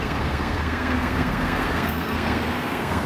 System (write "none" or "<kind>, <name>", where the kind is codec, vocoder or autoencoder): codec, SNAC